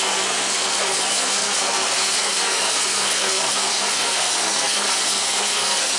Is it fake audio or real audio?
fake